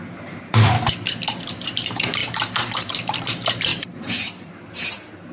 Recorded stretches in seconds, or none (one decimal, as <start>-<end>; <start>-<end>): none